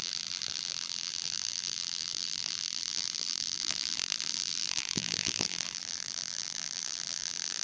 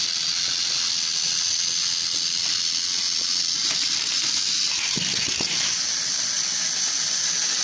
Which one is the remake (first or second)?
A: first